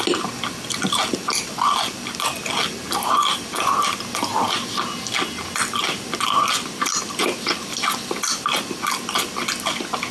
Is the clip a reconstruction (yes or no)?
no